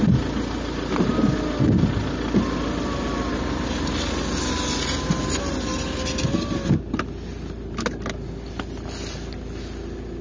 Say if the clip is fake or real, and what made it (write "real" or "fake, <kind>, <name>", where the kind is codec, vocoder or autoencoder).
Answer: real